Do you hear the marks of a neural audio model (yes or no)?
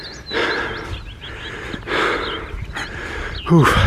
no